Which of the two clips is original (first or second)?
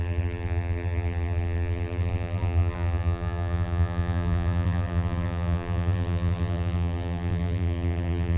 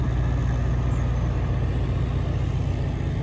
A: second